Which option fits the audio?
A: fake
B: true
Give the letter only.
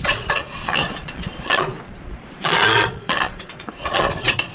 A